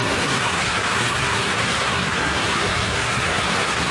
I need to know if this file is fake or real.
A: fake